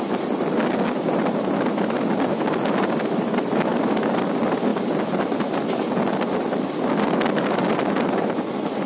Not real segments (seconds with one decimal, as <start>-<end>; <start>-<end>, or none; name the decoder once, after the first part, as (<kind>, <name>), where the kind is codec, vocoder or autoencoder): none